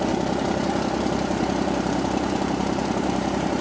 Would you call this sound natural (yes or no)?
no